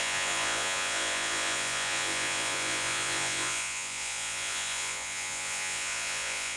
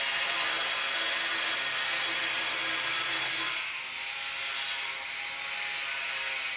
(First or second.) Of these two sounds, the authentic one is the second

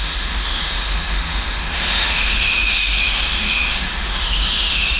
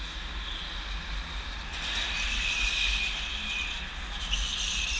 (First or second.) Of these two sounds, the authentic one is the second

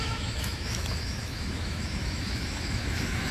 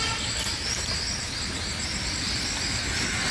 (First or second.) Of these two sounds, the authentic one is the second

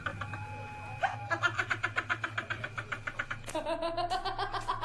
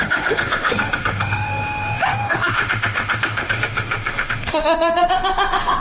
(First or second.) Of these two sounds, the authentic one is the first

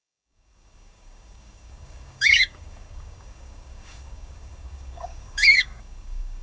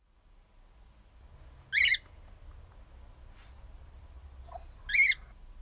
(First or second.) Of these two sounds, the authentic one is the second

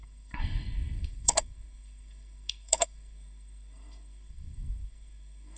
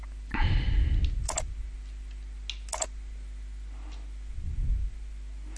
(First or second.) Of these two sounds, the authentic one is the second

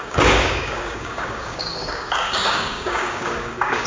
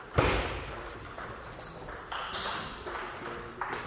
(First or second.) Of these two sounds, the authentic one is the second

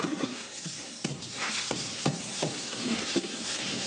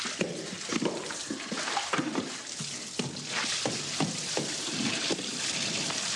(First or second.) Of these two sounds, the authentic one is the second